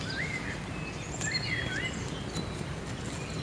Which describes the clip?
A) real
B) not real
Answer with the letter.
A